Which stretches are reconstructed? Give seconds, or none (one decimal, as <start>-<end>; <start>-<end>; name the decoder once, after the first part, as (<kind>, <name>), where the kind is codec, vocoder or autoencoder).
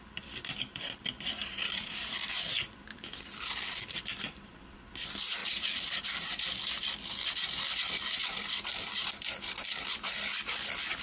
0.0-11.0 (vocoder, BigVGAN v2)